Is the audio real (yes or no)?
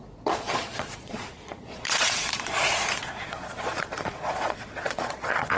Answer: no